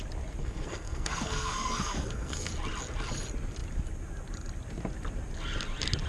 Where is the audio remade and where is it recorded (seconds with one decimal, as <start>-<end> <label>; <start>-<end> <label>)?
0.0-0.4 recorded; 0.4-2.5 remade; 2.5-6.1 recorded